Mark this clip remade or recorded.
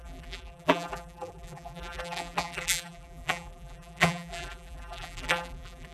remade